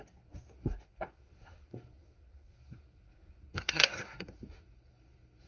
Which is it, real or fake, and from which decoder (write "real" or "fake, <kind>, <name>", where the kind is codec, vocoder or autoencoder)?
fake, codec, SNAC